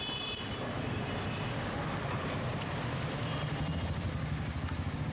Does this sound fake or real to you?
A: fake